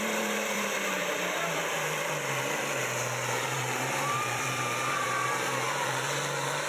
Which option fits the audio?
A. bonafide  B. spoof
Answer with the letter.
B